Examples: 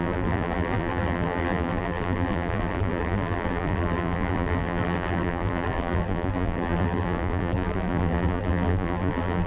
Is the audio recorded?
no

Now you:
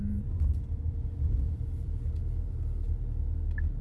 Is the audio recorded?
yes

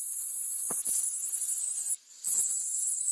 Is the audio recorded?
yes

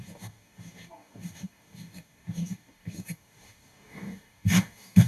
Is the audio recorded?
no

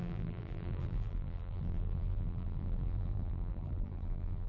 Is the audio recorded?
no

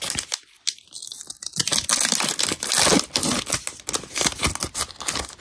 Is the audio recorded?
yes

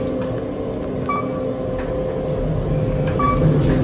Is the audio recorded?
yes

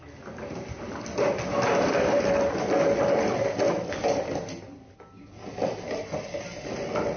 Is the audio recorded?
yes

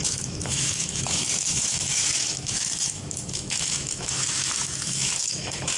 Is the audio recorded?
no